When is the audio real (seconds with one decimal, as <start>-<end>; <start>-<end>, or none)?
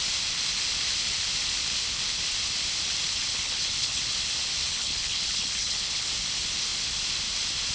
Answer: 0.0-3.3; 4.0-4.7; 6.1-7.7